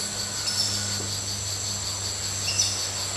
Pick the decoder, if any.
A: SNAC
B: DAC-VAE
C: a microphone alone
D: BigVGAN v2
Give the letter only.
C